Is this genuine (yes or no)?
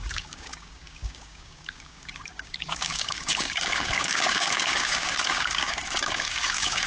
no